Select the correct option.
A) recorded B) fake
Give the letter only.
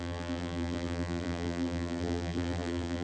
B